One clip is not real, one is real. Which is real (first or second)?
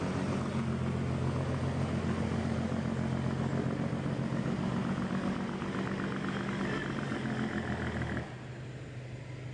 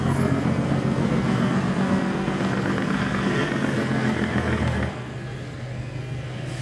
first